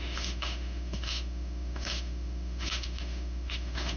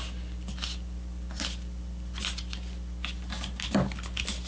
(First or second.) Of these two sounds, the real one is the second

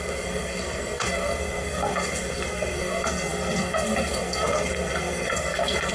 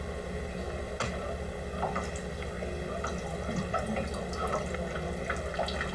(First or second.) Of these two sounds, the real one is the second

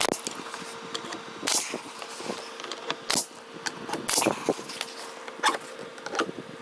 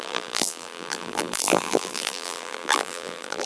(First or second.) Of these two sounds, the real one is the first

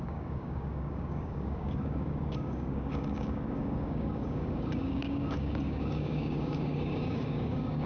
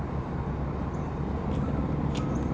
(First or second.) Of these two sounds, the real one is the second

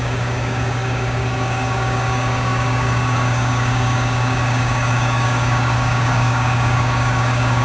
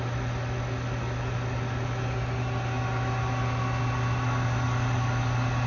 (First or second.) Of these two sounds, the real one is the second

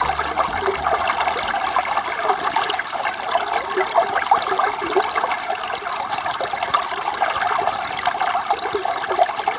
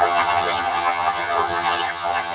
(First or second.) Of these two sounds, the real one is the first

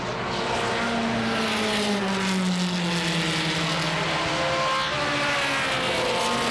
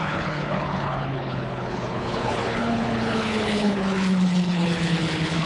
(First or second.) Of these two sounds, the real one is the first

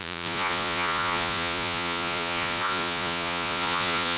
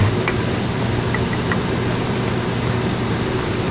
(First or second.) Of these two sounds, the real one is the second